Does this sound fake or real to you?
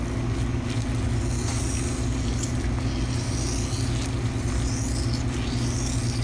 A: real